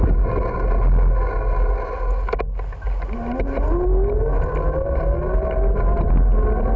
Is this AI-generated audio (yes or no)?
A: no